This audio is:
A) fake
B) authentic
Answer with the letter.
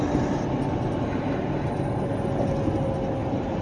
B